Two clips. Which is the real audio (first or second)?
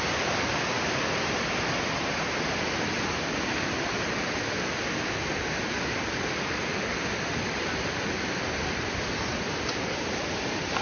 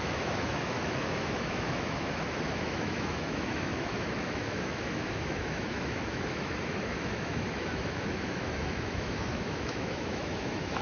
first